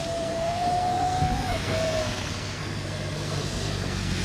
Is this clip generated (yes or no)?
yes